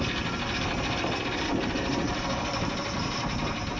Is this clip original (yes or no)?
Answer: yes